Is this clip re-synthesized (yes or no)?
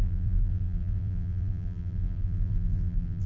yes